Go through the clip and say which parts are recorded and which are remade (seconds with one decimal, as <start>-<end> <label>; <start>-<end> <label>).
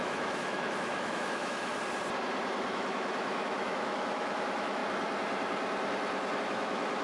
0.0-1.7 remade; 1.7-2.7 recorded; 2.7-4.8 remade; 4.8-6.4 recorded; 6.4-7.0 remade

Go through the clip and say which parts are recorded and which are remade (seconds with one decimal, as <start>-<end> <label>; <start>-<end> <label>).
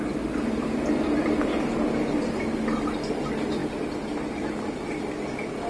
0.0-5.7 recorded